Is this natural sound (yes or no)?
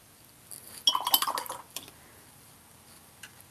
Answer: yes